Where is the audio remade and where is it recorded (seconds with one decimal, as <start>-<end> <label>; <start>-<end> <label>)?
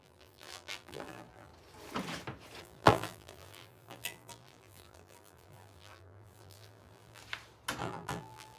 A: 0.0-1.5 remade; 1.5-2.6 recorded; 2.6-7.2 remade; 7.2-7.8 recorded; 7.8-8.6 remade